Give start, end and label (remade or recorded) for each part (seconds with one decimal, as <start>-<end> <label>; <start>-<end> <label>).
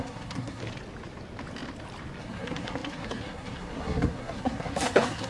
0.0-0.6 remade; 0.6-2.2 recorded; 2.2-5.3 remade